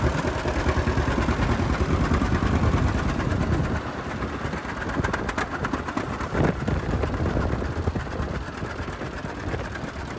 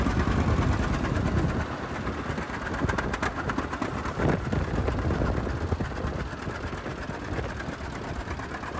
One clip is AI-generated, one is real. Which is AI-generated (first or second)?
first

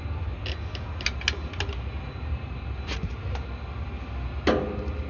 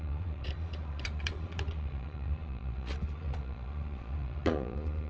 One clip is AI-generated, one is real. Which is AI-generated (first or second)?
second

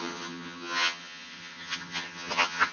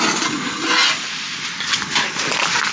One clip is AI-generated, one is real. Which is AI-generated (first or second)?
first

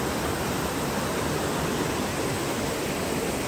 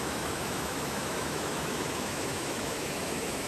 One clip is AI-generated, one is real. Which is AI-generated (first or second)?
second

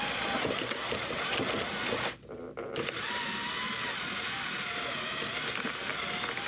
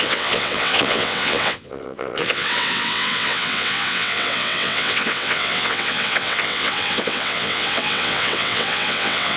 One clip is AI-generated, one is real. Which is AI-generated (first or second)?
second